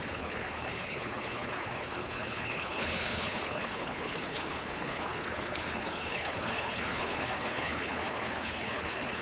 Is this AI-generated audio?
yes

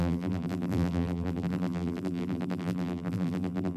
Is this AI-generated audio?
yes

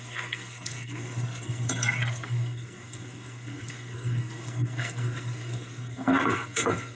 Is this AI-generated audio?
yes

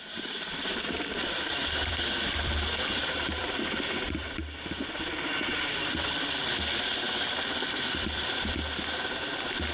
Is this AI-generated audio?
yes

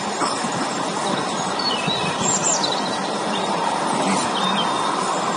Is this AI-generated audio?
no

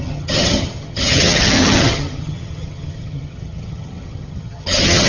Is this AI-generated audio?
yes